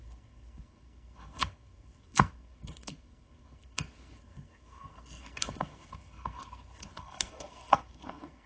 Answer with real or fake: fake